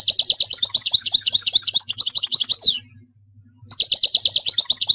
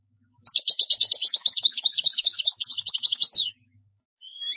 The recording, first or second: first